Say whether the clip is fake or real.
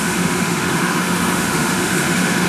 fake